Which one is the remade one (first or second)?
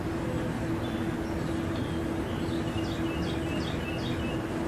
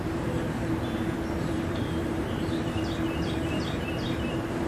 second